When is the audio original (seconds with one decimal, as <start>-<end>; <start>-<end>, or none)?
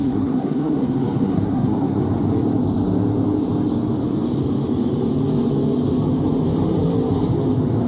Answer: 2.0-7.9